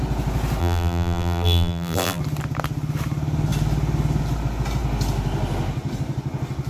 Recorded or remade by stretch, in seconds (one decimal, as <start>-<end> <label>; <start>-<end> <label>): 0.0-0.6 recorded; 0.6-2.2 remade; 2.2-6.7 recorded